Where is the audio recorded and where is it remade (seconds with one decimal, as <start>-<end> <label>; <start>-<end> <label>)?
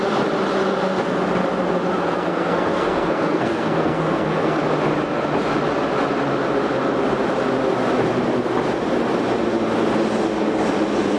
0.0-1.9 recorded; 1.9-4.6 remade; 4.6-11.2 recorded